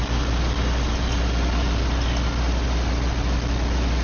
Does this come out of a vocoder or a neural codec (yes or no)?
no